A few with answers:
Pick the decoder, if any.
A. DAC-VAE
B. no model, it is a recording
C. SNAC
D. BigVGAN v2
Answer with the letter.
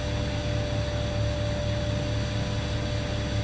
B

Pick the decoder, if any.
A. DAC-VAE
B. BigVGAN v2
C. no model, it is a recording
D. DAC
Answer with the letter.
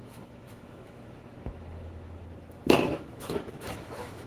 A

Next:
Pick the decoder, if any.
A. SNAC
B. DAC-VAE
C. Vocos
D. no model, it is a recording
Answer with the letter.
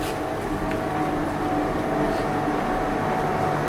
D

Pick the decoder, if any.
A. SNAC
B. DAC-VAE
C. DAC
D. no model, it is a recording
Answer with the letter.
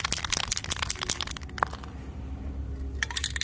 D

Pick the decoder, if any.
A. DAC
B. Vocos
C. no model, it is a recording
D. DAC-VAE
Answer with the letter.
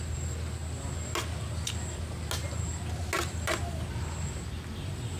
C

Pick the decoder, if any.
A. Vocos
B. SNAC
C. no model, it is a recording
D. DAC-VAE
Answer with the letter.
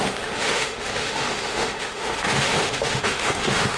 D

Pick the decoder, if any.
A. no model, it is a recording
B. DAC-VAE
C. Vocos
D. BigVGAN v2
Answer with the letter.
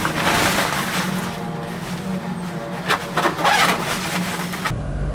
A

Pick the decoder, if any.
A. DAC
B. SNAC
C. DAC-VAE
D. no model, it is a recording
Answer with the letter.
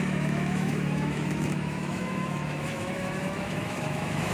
C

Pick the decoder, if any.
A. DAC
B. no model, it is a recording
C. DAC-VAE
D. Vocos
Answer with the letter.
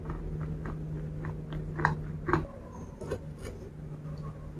B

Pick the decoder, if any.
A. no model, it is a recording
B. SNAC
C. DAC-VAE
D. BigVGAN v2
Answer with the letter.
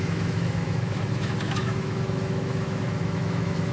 C